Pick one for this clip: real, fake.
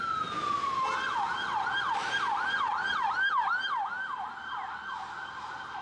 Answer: real